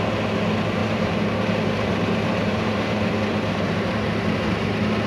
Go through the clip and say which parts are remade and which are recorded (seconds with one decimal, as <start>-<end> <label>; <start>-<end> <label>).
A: 0.0-0.8 recorded; 0.8-3.9 remade; 3.9-5.1 recorded